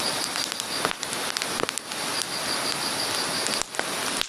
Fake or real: real